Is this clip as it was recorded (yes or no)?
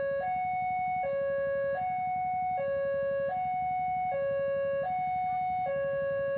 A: yes